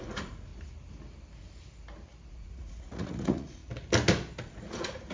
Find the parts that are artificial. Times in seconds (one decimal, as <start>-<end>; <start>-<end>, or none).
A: 0.0-0.5; 2.3-3.6; 4.4-5.1